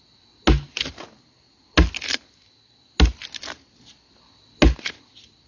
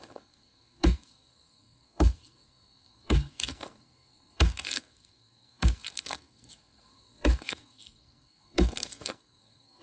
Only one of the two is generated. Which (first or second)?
second